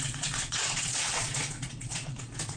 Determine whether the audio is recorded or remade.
remade